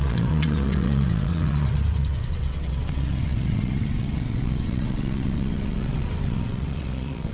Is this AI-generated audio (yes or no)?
yes